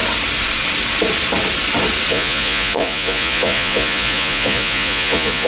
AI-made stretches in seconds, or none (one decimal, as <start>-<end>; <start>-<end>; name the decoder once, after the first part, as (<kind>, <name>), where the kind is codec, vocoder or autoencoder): 2.1-5.5 (vocoder, Vocos)

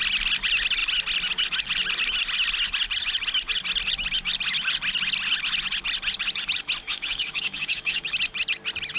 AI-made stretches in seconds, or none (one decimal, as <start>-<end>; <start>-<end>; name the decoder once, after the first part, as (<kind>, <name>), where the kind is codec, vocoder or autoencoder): 6.8-8.0 (codec, DAC)

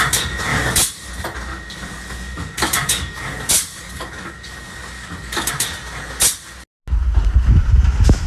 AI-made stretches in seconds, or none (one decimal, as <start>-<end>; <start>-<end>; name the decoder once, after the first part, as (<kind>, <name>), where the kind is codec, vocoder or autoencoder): 0.5-1.1 (codec, DAC); 1.5-5.5

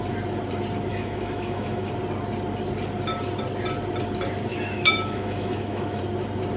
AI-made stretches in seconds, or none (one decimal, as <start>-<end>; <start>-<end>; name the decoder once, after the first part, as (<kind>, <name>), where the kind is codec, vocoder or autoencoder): 0.9-1.9 (autoencoder, DAC-VAE); 4.5-6.0

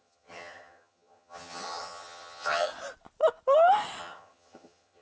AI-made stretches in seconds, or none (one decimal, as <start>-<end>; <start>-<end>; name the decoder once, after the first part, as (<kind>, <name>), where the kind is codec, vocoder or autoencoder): 0.0-2.7 (vocoder, HiFi-GAN); 4.0-5.0

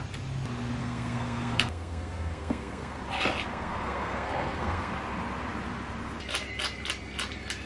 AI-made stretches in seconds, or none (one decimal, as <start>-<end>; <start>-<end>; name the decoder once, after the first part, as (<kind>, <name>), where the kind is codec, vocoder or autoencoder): 0.8-3.0 (codec, SNAC); 3.5-4.9